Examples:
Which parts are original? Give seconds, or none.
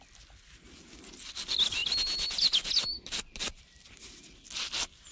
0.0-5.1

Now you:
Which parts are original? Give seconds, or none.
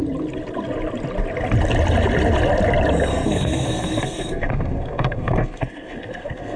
0.0-3.1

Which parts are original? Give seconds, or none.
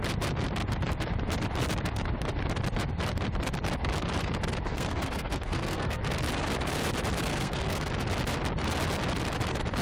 0.0-4.7; 6.0-7.3; 7.9-9.8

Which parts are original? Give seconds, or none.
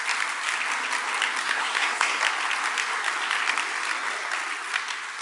0.0-1.4; 2.2-5.2